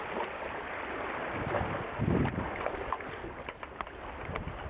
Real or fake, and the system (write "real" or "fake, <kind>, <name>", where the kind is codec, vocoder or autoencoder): real